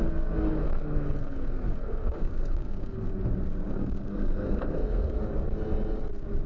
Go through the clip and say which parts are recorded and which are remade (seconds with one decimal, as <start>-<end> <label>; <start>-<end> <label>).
0.0-0.6 recorded; 0.6-3.1 remade; 3.1-3.7 recorded; 3.7-5.2 remade; 5.2-6.5 recorded

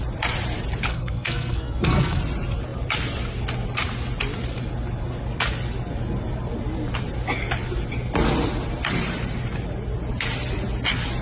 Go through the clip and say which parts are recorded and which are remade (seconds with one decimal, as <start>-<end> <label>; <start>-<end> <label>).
0.0-0.9 recorded; 0.9-2.2 remade; 2.2-11.2 recorded

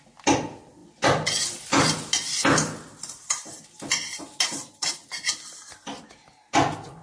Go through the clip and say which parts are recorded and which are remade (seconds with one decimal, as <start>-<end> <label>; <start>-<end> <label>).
0.0-7.0 recorded

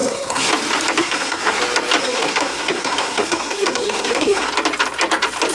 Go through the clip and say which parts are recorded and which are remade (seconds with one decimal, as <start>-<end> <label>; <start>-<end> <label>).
0.0-0.5 remade; 0.5-1.0 recorded; 1.0-1.6 remade; 1.6-2.0 recorded; 2.0-4.5 remade; 4.5-5.5 recorded

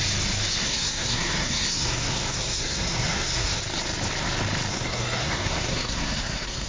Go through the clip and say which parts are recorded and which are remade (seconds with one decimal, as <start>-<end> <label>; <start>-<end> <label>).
0.0-0.6 recorded; 0.6-3.6 remade; 3.6-4.7 recorded; 4.7-6.7 remade

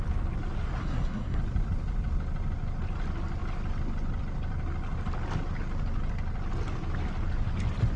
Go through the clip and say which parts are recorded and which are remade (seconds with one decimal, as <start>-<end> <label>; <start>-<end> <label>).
0.0-0.8 recorded; 0.8-1.4 remade; 1.4-8.0 recorded

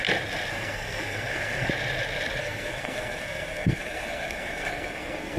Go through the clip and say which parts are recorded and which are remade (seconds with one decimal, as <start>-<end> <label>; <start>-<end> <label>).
0.0-0.5 recorded; 0.5-1.7 remade; 1.7-2.4 recorded; 2.4-5.4 remade